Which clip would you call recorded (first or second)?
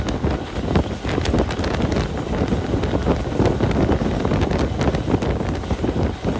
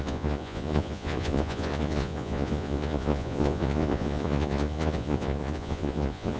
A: first